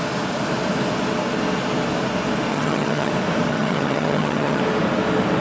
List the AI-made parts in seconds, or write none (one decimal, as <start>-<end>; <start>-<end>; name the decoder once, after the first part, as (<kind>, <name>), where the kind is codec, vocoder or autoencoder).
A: 2.5-3.1 (vocoder, HiFi-GAN); 3.5-4.6